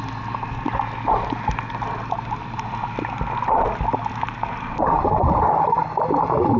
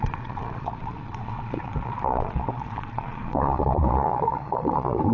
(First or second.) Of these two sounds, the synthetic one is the second